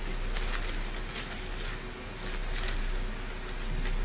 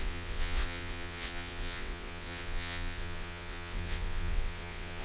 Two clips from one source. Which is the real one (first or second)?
first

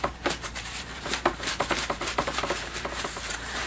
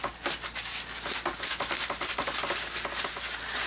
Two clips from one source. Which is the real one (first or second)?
second